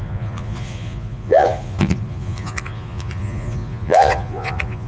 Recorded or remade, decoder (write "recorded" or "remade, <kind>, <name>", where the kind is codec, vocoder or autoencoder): remade, vocoder, Vocos